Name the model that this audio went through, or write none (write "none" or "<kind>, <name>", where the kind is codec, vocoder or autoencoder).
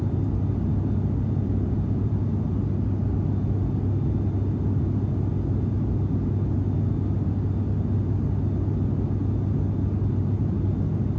none